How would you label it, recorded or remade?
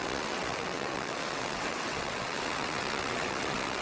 remade